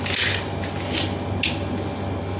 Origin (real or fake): real